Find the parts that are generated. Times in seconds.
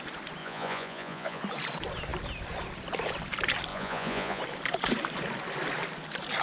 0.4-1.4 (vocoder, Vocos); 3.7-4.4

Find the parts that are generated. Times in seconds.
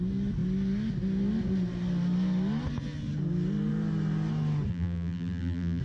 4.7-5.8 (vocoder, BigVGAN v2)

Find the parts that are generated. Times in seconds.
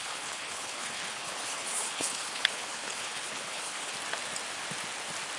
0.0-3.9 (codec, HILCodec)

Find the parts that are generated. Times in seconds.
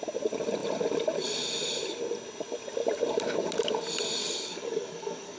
4.2-5.4 (codec, DAC)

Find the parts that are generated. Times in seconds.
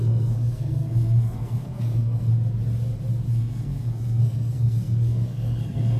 0.0-2.3 (codec, SNAC); 3.3-6.0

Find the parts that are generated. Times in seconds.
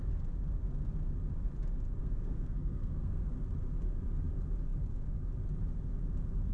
2.0-3.3 (codec, SNAC)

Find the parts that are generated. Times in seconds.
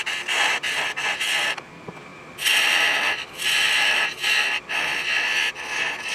0.0-2.1 (vocoder, BigVGAN v2)